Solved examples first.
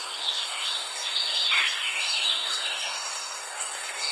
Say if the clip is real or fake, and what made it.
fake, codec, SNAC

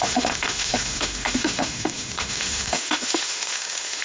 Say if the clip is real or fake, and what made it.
fake, autoencoder, DAC-VAE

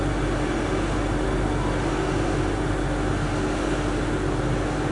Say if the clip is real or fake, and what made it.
real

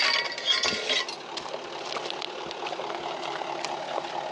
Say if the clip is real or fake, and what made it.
real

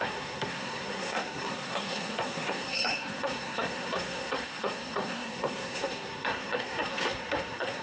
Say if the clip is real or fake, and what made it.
fake, codec, SNAC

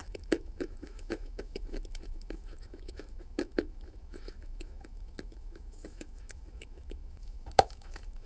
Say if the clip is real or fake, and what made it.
fake, autoencoder, DAC-VAE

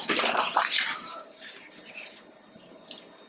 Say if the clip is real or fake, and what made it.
real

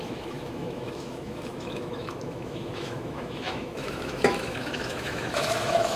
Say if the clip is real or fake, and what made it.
fake, autoencoder, DAC-VAE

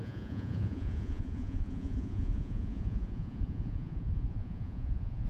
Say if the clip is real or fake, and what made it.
fake, vocoder, Vocos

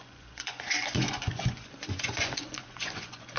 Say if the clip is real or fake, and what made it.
fake, vocoder, Vocos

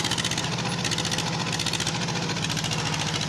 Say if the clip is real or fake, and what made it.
real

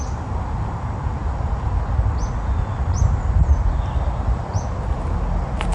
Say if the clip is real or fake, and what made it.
real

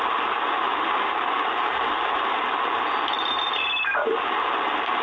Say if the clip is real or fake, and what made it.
real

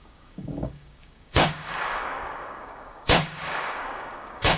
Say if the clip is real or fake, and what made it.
fake, codec, DAC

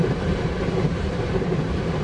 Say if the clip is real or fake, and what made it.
fake, vocoder, BigVGAN v2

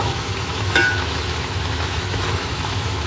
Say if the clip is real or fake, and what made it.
fake, autoencoder, DAC-VAE